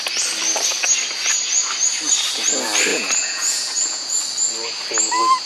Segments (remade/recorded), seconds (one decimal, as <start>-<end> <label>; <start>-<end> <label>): 0.0-2.9 recorded; 2.9-4.2 remade; 4.2-5.5 recorded